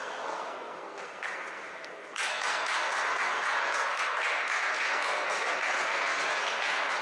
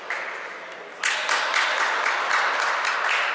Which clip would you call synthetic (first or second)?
first